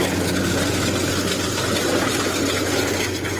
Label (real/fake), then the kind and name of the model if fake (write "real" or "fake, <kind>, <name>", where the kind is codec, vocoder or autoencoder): real